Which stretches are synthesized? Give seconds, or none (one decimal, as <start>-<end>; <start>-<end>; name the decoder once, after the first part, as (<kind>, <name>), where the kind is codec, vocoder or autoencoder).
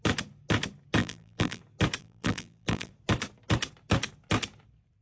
1.0-1.6 (vocoder, BigVGAN v2); 2.0-2.9